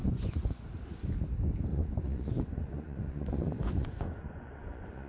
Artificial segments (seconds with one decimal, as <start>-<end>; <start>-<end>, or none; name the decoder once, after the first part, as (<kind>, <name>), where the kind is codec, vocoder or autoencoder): 0.0-0.7 (vocoder, Vocos); 1.7-5.1